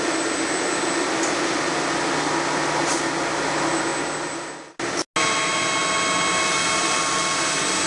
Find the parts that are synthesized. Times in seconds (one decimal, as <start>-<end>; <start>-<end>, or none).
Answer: none